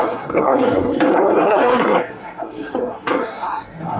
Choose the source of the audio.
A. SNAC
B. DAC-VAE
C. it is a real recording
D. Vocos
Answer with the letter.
A